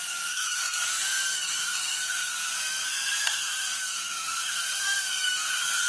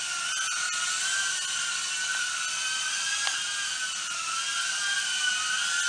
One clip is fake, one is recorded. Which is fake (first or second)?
first